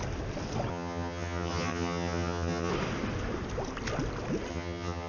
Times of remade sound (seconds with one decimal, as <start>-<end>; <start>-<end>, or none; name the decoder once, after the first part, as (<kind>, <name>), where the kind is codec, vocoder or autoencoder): 0.7-2.7 (vocoder, HiFi-GAN); 4.5-5.1